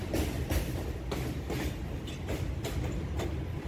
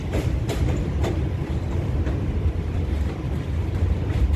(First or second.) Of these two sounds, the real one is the first